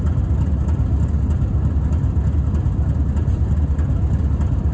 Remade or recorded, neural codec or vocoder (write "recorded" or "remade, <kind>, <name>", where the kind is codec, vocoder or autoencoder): recorded